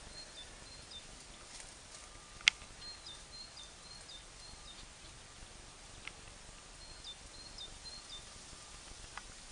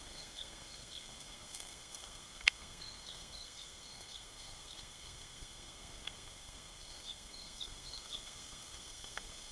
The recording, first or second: first